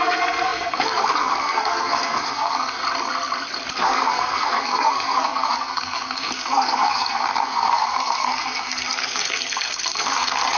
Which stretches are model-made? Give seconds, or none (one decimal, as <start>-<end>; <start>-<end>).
0.0-2.8; 3.7-10.6